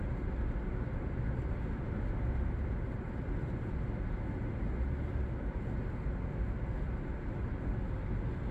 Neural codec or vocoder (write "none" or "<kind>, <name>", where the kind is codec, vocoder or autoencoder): none